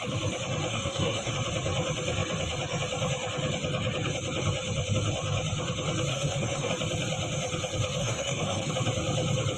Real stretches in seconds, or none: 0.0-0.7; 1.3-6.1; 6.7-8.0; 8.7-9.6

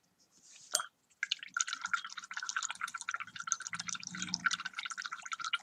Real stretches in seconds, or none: 0.0-5.6